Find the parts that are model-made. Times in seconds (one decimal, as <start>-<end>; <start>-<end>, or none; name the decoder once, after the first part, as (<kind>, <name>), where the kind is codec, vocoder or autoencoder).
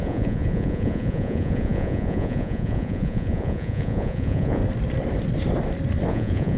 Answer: 0.0-4.6 (vocoder, Vocos); 6.1-6.6